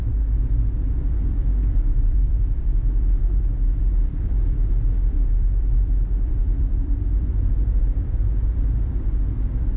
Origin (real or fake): fake